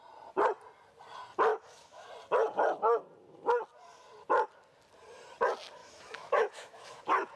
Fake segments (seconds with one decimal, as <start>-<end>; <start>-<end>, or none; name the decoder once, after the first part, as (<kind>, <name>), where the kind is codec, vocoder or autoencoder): 1.5-2.1 (autoencoder, DAC-VAE); 5.8-7.0